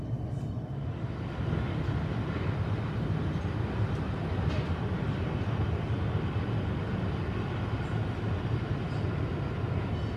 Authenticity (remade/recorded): recorded